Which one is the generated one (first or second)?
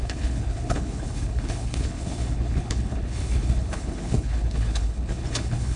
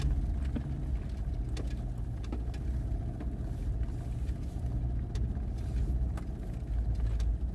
first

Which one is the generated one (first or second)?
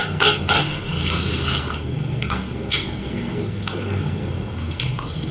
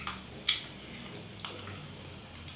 first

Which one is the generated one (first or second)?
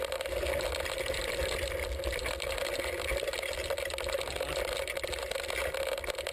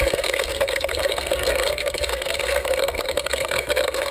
second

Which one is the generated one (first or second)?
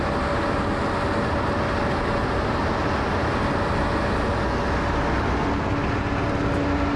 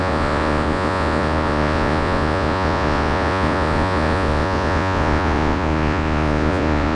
second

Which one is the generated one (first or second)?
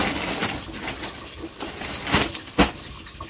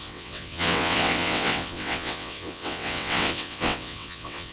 second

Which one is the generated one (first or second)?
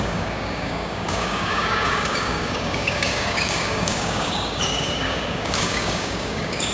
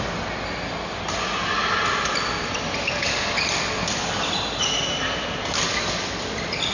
first